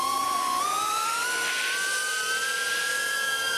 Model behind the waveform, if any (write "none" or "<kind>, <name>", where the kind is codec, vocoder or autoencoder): none